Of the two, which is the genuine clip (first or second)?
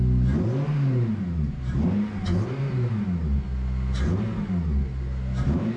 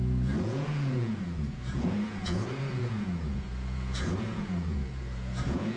first